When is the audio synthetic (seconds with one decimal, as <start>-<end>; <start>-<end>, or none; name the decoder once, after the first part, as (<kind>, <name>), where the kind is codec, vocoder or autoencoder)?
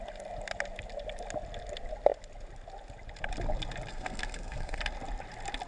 3.9-4.8 (codec, SNAC)